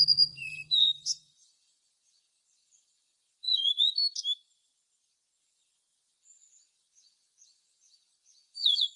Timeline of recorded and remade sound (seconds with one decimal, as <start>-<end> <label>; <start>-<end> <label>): 0.0-4.0 remade; 4.0-5.4 recorded; 5.4-9.0 remade